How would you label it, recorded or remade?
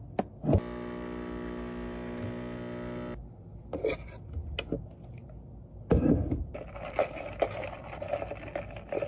recorded